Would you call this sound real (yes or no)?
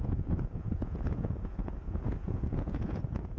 no